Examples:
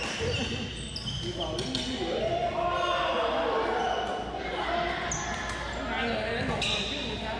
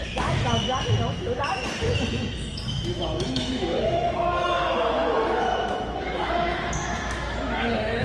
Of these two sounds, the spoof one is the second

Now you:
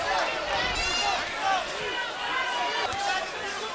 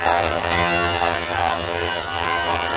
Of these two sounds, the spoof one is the second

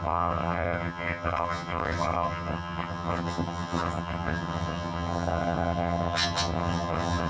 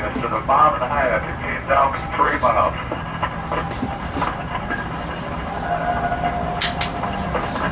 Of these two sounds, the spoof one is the first